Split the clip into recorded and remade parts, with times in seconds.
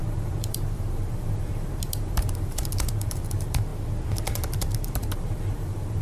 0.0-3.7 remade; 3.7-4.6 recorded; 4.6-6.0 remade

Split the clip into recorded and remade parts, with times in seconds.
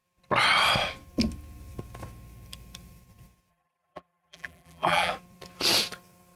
0.0-3.5 recorded; 3.5-5.1 remade; 5.1-6.4 recorded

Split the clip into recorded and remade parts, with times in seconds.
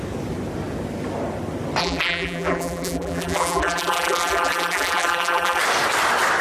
0.0-1.8 recorded; 1.8-5.6 remade; 5.6-6.4 recorded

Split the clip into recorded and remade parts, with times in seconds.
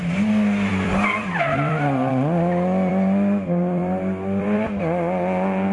0.0-0.7 recorded; 0.7-2.1 remade; 2.1-2.9 recorded; 2.9-4.8 remade; 4.8-5.7 recorded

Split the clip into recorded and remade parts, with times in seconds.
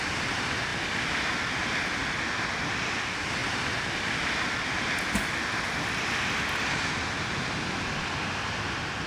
0.0-9.1 recorded